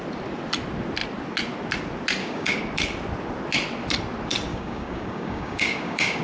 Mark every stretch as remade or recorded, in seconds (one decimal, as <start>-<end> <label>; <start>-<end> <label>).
0.0-2.2 recorded; 2.2-2.7 remade; 2.7-4.5 recorded; 4.5-6.2 remade